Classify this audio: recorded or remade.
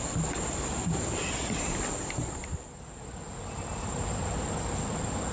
recorded